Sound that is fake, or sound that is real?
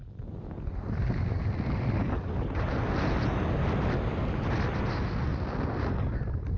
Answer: real